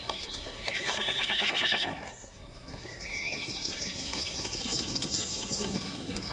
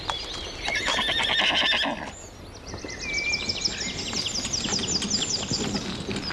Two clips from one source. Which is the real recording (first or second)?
second